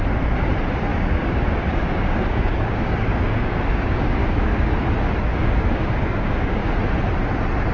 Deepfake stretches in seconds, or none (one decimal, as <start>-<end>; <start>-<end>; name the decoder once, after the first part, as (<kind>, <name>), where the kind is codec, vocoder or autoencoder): 0.9-4.7 (codec, DAC); 5.3-6.7